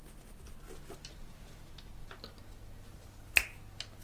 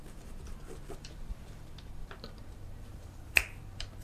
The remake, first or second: second